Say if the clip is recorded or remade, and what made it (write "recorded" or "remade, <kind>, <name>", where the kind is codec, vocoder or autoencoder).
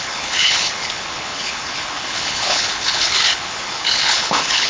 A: remade, codec, HILCodec